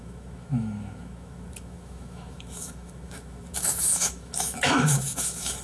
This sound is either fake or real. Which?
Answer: fake